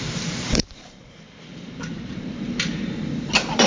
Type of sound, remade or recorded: remade